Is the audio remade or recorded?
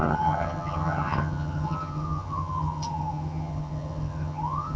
remade